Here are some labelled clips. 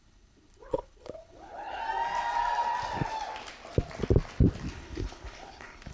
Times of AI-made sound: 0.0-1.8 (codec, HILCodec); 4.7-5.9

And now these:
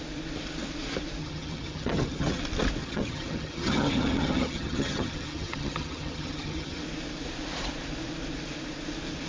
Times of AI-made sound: 1.2-2.4 (vocoder, HiFi-GAN); 2.8-6.8

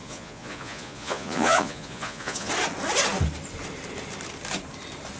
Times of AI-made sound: 0.0-2.5 (vocoder, Vocos)

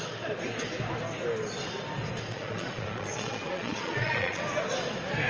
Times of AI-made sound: 2.3-4.4 (vocoder, Vocos)